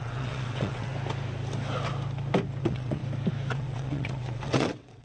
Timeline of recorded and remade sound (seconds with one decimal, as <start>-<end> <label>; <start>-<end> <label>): 0.0-0.9 remade; 0.9-2.6 recorded; 2.6-3.0 remade; 3.0-3.5 recorded; 3.5-5.0 remade